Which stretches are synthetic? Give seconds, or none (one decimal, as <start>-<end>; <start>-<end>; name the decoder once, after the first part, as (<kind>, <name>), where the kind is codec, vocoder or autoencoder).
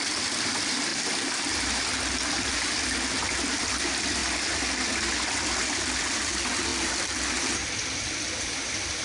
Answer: 0.0-4.2 (vocoder, BigVGAN v2); 6.0-9.0